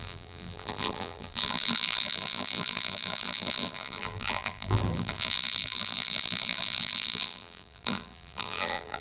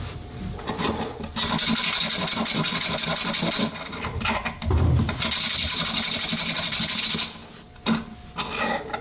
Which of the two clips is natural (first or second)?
second